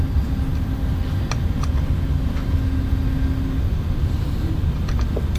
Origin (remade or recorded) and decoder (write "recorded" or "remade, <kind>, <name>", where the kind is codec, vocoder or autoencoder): recorded